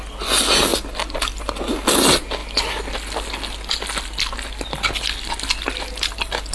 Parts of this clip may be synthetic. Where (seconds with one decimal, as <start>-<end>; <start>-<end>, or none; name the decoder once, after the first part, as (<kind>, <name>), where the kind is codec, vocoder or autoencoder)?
none